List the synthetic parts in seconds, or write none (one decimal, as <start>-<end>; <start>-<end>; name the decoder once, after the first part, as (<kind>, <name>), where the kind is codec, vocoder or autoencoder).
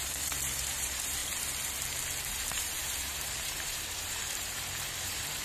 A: 0.0-1.2 (vocoder, BigVGAN v2); 2.3-5.4